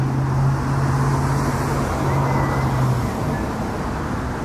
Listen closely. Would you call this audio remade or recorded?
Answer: recorded